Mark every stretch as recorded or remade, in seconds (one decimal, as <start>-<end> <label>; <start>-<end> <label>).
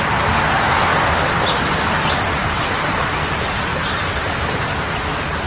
0.0-0.9 recorded; 0.9-1.9 remade; 1.9-2.4 recorded; 2.4-3.1 remade; 3.1-3.7 recorded; 3.7-4.8 remade; 4.8-5.5 recorded